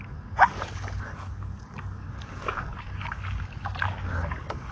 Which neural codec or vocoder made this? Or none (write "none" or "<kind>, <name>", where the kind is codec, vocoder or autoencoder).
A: codec, DAC